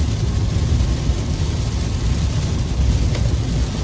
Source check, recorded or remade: recorded